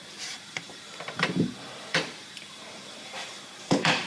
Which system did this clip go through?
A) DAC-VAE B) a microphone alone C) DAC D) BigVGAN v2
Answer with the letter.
D